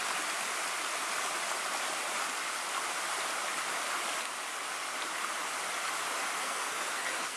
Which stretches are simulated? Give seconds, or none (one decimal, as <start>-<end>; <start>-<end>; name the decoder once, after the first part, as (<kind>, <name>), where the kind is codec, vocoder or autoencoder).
6.4-7.4 (codec, SNAC)

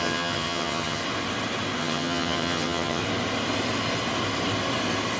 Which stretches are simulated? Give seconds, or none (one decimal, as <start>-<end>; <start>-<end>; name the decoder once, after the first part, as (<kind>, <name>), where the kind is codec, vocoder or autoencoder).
0.0-1.0 (vocoder, HiFi-GAN); 1.8-3.0

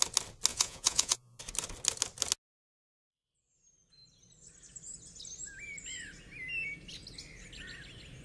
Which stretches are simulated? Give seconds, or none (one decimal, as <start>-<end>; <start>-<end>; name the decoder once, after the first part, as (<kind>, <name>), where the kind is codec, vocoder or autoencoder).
0.5-1.4 (vocoder, Vocos)